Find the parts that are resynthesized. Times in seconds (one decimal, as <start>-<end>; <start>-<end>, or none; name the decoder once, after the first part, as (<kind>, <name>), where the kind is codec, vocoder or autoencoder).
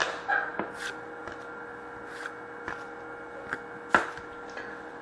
none